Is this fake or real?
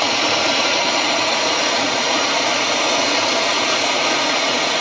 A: fake